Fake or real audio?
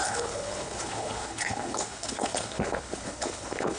fake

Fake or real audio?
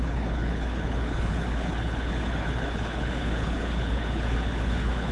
fake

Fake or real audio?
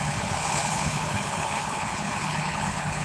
fake